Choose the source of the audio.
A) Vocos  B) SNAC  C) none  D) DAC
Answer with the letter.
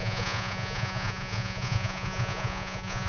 A